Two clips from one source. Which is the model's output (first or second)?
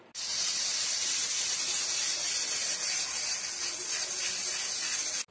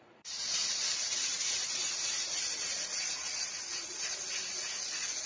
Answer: second